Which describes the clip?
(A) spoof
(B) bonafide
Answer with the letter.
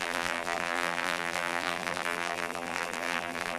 A